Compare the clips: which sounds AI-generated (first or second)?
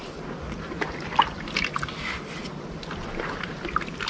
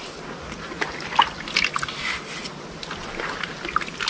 first